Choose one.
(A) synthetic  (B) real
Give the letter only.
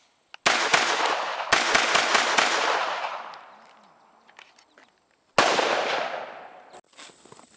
B